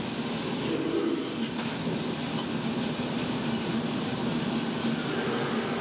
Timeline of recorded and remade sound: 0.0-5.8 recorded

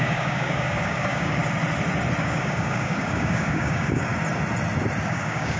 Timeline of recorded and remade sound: 0.0-1.4 remade; 1.4-2.2 recorded; 2.2-4.1 remade; 4.1-5.0 recorded; 5.0-5.6 remade